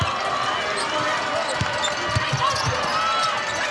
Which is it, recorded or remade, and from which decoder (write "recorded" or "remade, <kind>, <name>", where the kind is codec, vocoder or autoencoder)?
recorded